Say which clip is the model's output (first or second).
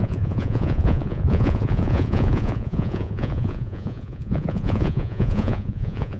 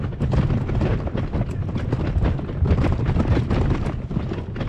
first